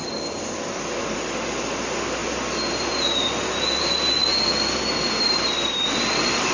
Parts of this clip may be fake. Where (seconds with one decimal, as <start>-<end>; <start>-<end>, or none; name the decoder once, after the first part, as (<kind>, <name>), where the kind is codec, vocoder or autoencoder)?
none